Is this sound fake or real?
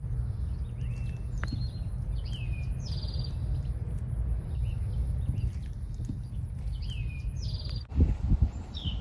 real